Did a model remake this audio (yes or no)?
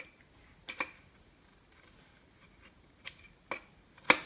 no